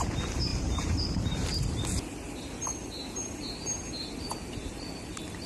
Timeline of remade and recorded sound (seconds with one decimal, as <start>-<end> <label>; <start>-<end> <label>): 0.0-0.5 recorded; 0.5-1.8 remade; 1.8-5.5 recorded